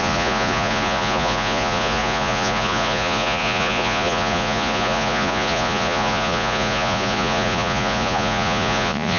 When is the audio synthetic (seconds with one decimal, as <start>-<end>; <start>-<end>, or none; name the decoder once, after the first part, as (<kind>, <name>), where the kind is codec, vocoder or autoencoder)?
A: 0.0-9.2 (vocoder, Vocos)